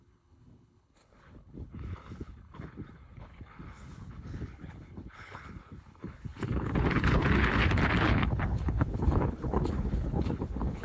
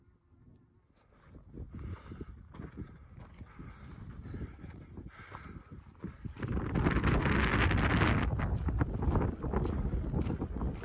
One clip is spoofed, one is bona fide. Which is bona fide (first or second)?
second